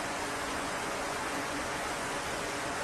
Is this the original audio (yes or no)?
no